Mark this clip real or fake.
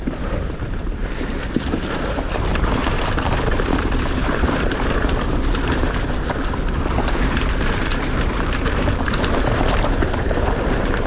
fake